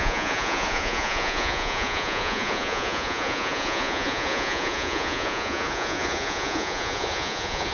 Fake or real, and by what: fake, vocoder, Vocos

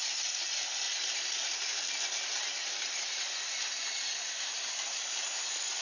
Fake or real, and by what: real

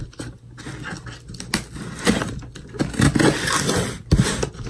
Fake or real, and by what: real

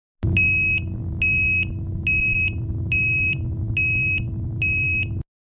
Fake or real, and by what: real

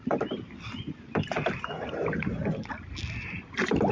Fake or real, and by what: real